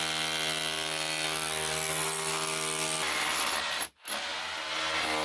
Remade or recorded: recorded